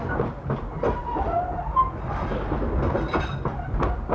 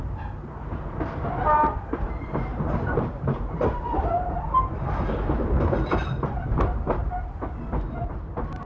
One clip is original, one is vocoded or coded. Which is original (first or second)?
first